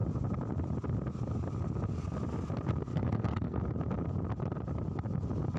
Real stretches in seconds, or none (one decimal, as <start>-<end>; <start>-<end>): 0.0-2.9; 3.6-5.6